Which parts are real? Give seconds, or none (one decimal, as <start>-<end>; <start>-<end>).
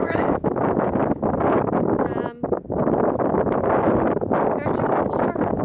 0.9-5.6